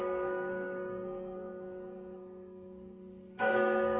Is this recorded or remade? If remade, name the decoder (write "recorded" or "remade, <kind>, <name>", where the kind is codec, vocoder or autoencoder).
remade, codec, SNAC